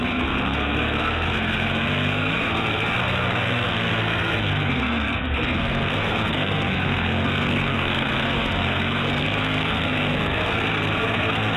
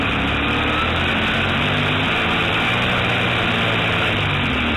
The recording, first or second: second